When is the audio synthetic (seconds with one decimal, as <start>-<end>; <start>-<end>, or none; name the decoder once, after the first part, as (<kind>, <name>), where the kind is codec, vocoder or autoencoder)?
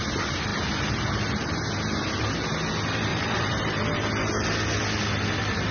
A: 3.1-3.8 (vocoder, BigVGAN v2)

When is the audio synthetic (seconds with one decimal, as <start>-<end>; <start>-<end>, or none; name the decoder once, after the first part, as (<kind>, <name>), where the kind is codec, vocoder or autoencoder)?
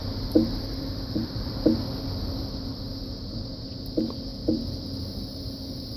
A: 4.3-5.4 (vocoder, BigVGAN v2)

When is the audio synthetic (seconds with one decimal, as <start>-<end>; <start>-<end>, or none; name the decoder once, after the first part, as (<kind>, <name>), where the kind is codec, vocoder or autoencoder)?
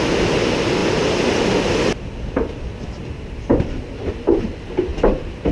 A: 4.9-5.5 (vocoder, BigVGAN v2)